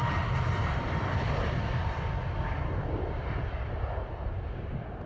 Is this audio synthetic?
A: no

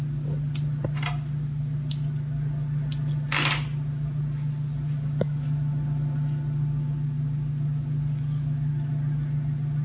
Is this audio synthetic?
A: no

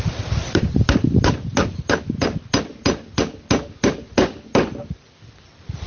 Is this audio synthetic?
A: no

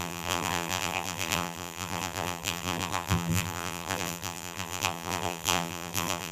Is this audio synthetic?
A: yes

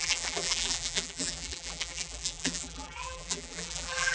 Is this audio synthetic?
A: yes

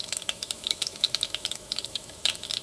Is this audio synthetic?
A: yes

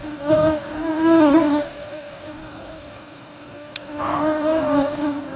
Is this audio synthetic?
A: yes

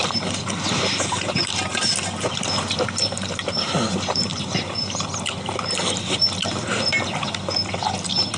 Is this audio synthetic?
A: no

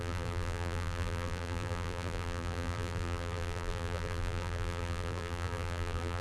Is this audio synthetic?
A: yes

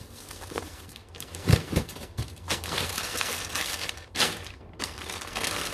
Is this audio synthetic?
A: yes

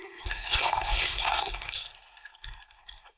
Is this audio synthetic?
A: yes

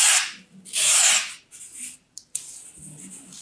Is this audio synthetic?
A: no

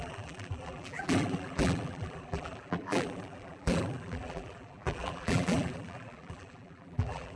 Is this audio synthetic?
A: yes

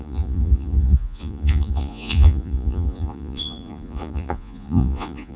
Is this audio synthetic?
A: yes